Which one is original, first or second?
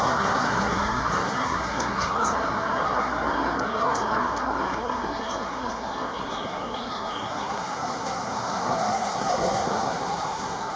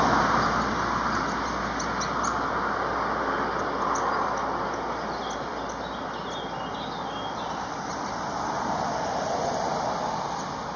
second